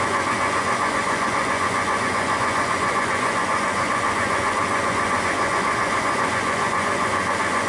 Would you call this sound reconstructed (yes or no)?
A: yes